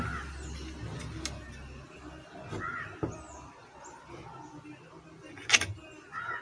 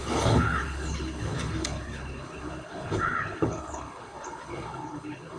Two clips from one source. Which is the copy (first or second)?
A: second